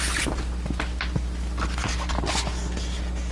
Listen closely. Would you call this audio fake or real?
real